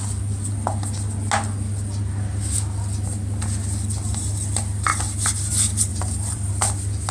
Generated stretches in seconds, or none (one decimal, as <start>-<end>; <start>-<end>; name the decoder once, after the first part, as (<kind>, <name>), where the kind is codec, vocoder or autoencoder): 5.9-6.5 (vocoder, BigVGAN v2)